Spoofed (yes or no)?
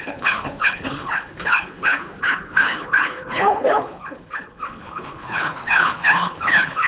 yes